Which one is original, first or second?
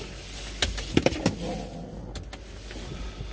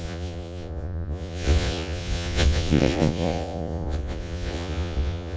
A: first